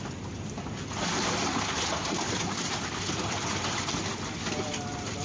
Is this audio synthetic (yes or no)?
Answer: no